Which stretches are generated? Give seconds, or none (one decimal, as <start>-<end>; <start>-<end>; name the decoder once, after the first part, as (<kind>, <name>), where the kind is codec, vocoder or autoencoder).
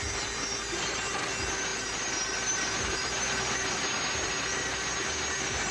none